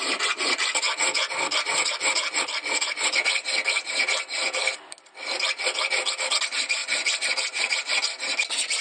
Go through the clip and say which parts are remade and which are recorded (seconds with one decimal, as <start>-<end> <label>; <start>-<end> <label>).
0.0-8.8 recorded